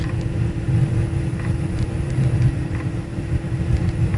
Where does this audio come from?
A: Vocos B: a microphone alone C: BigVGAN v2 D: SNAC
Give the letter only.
C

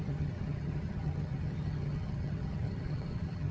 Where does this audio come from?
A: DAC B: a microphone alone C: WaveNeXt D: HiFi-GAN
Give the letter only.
D